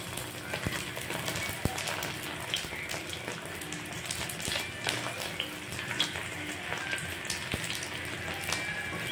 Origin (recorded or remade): recorded